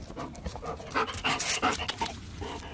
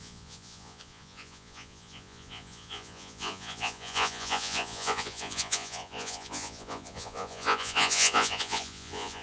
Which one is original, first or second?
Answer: first